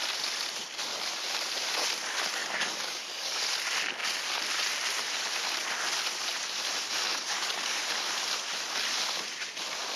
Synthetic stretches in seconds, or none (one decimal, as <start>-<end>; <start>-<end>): 2.4-3.4; 7.1-7.8